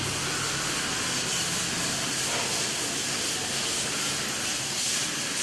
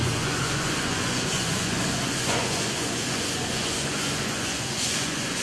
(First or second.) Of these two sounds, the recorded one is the first